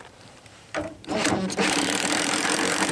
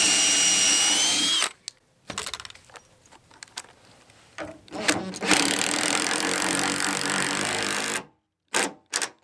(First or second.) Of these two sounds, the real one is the second